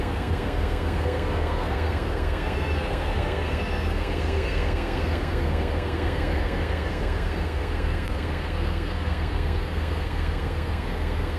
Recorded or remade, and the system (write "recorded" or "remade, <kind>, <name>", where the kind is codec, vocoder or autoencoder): remade, codec, SNAC